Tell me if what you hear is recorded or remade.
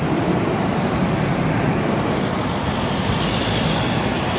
recorded